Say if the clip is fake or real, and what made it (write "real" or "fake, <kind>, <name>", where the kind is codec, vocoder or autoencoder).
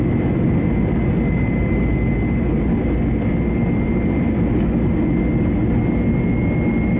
real